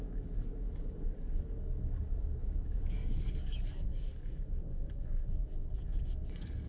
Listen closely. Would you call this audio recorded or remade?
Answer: remade